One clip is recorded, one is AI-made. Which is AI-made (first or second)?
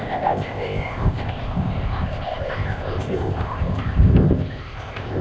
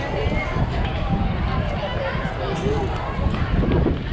first